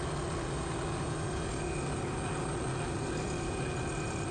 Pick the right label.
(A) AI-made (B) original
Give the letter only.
B